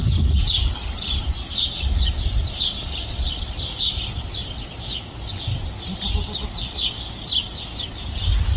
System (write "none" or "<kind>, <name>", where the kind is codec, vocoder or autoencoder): none